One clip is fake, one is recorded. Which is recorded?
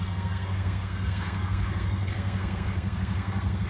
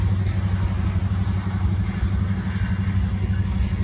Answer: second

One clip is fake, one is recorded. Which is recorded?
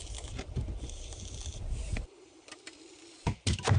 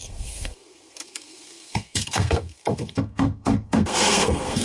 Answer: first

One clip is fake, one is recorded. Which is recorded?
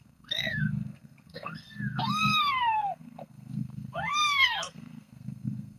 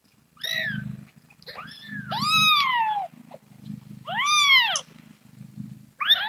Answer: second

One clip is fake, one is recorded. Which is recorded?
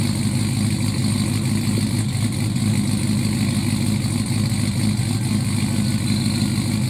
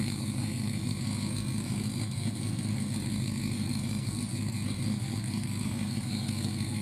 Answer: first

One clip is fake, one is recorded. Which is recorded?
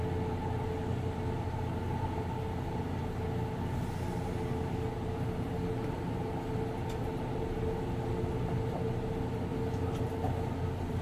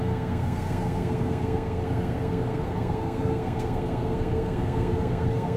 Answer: first